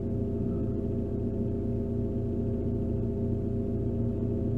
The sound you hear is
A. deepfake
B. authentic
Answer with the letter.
B